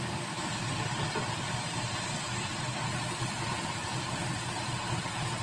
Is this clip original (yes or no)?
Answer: yes